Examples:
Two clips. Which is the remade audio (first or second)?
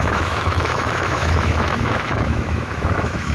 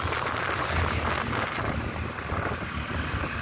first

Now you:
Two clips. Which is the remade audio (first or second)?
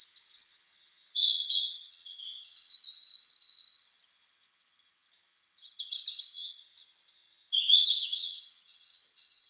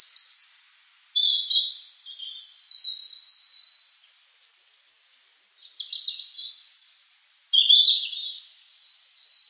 first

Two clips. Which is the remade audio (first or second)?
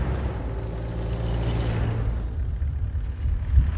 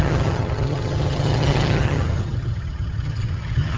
second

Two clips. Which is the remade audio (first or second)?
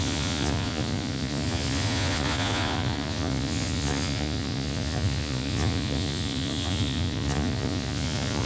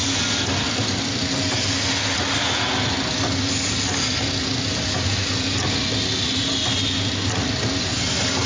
first